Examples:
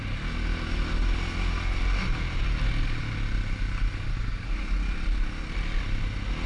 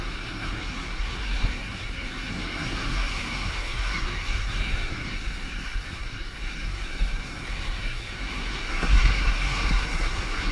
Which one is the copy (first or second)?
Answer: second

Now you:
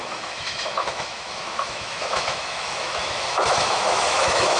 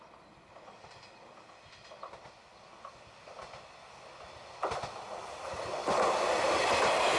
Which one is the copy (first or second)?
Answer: first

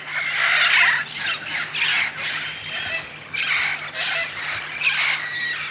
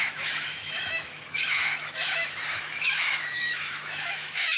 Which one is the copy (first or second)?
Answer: second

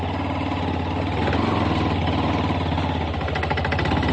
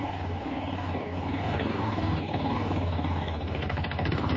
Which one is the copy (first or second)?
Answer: second